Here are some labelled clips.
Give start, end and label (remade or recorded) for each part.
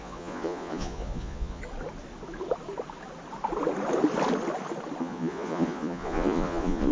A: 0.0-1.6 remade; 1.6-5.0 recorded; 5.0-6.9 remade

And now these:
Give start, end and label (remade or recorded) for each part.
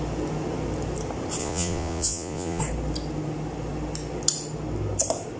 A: 0.0-1.4 recorded; 1.4-2.6 remade; 2.6-5.4 recorded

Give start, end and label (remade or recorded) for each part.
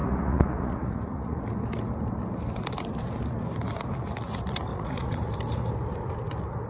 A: 0.0-1.4 remade; 1.4-4.7 recorded; 4.7-5.3 remade; 5.3-6.7 recorded